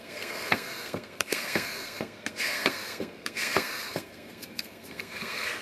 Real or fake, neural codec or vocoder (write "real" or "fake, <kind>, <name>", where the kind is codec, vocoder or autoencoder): fake, codec, SNAC